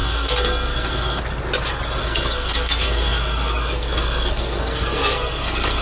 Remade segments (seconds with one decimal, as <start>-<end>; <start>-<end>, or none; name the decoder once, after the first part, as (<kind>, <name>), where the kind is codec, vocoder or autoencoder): 0.0-1.2 (codec, SNAC); 2.0-5.8